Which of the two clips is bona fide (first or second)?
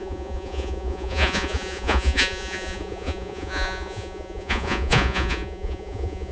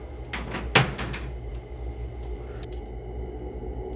second